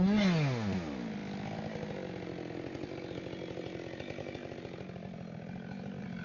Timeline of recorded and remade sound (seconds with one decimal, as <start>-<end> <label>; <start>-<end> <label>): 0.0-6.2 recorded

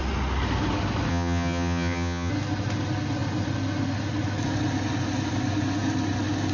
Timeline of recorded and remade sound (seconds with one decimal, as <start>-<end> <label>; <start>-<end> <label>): 0.0-1.1 recorded; 1.1-2.3 remade; 2.3-6.5 recorded

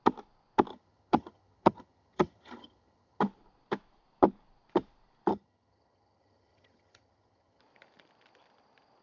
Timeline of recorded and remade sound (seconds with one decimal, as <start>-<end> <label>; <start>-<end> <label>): 0.0-0.7 recorded; 0.7-3.2 remade; 3.2-5.3 recorded; 5.3-7.6 remade; 7.6-9.0 recorded

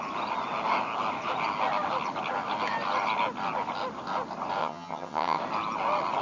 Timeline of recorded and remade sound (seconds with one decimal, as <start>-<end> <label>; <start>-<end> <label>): 0.0-4.6 recorded; 4.6-5.4 remade; 5.4-6.2 recorded

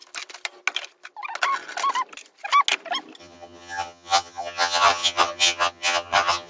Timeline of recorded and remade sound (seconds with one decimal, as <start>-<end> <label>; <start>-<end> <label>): 0.0-3.2 recorded; 3.2-6.5 remade

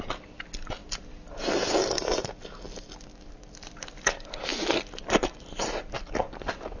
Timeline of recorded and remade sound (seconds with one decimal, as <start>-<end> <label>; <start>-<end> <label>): 0.0-6.8 recorded

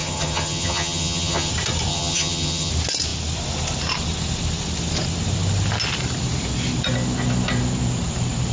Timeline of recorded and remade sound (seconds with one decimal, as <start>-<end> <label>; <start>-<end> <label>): 0.0-1.5 remade; 1.5-1.9 recorded; 1.9-2.7 remade; 2.7-8.5 recorded

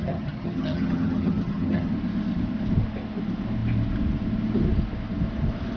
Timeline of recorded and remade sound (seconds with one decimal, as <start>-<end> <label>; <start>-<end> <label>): 0.0-1.9 remade; 1.9-5.8 recorded